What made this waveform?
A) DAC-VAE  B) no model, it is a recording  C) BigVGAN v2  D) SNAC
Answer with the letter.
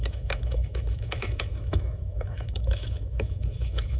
A